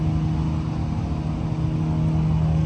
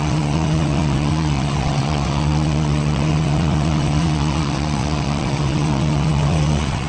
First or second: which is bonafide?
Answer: first